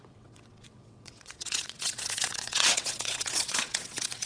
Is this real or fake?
fake